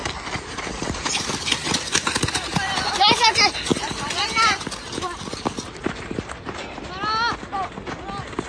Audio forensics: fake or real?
real